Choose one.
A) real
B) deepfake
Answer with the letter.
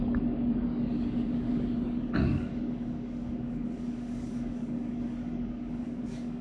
B